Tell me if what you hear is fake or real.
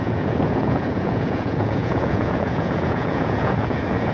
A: fake